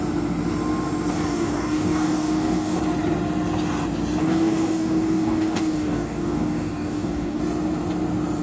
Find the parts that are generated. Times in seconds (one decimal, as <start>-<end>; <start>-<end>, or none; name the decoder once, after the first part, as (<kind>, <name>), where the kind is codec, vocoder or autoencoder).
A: 1.1-2.8 (codec, DAC); 4.2-7.4